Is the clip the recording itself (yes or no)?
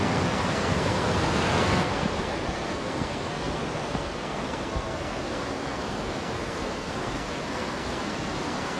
no